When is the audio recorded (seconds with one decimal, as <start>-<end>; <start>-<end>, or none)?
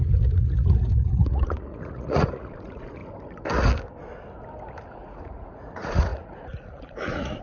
3.0-4.9